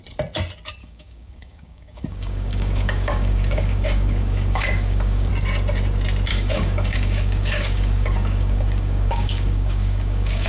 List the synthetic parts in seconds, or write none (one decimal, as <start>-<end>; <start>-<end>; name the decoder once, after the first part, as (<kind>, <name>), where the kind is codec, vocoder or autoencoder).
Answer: 0.8-5.3 (codec, DAC); 6.3-10.5

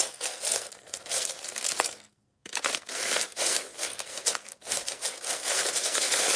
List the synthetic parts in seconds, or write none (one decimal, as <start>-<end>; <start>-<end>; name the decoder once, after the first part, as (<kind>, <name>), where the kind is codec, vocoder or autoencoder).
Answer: 0.0-6.4 (codec, SNAC)

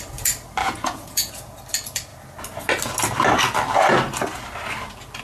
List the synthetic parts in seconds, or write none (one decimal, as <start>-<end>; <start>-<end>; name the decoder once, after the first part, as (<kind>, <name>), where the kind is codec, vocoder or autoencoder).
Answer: 0.6-1.6 (vocoder, Vocos)

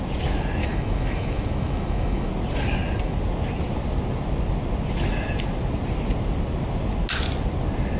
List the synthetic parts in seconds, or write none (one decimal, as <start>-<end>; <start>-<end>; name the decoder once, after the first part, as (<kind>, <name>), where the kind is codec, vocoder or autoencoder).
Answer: 0.6-2.3 (autoencoder, DAC-VAE)